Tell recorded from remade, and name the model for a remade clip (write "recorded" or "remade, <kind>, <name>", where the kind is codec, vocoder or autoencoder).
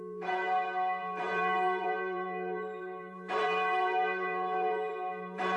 remade, vocoder, BigVGAN v2